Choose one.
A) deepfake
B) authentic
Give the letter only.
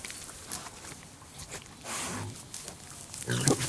B